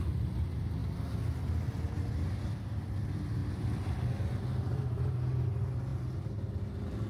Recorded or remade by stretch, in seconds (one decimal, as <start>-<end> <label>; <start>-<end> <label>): 0.0-7.1 recorded